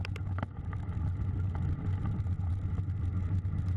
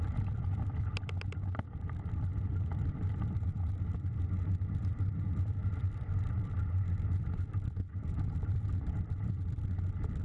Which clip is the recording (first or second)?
first